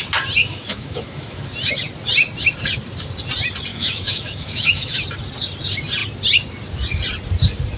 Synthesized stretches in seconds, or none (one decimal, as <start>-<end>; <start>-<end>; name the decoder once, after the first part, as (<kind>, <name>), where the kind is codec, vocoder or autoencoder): 0.4-1.4 (autoencoder, DAC-VAE); 3.7-5.0